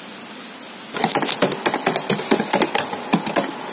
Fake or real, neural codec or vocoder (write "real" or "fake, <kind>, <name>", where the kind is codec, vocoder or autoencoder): real